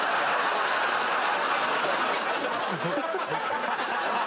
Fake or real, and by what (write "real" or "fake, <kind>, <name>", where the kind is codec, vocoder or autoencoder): real